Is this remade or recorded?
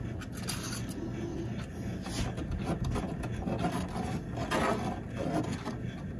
recorded